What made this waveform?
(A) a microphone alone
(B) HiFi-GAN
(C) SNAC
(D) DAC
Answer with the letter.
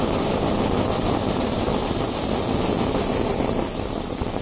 A